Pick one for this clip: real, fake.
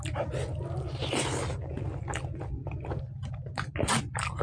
real